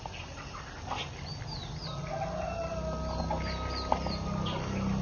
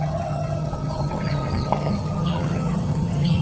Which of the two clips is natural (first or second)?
first